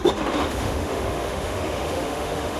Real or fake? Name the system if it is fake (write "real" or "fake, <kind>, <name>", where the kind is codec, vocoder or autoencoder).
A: fake, autoencoder, DAC-VAE